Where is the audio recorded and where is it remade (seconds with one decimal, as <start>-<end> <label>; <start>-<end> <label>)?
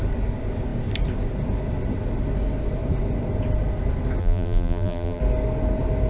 0.0-4.2 recorded; 4.2-5.2 remade; 5.2-6.1 recorded